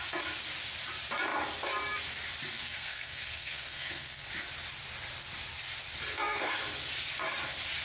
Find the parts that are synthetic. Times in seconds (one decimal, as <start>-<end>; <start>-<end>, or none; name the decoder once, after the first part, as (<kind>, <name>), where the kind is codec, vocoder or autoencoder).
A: 2.6-4.3 (codec, SNAC); 6.1-6.6